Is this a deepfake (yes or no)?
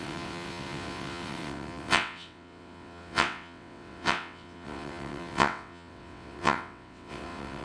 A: yes